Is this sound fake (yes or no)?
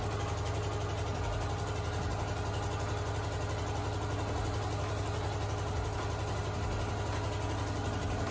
no